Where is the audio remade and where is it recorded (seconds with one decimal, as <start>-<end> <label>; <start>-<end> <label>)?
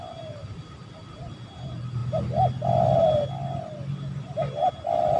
0.0-0.4 recorded; 0.4-1.3 remade; 1.3-5.2 recorded